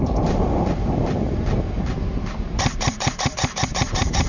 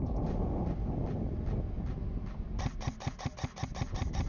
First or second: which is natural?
second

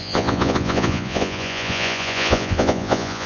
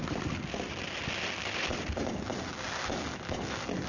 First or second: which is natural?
second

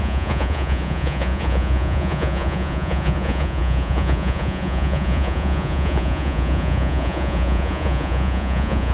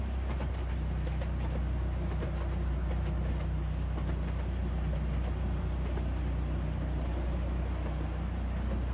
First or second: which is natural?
second